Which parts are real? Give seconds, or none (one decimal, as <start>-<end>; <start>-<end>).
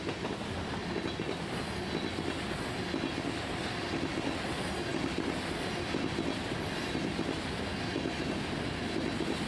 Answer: 0.0-9.5